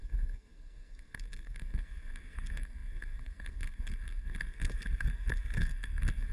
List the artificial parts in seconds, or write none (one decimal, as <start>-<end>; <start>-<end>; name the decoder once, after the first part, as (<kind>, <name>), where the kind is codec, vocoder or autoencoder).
0.0-6.3 (codec, SNAC)